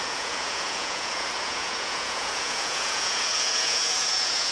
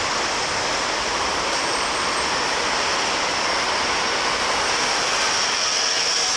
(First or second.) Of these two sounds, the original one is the second